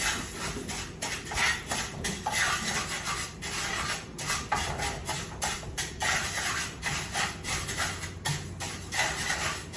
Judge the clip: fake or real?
real